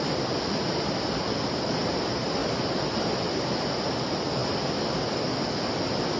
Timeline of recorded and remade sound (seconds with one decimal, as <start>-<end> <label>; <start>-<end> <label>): 0.0-6.2 recorded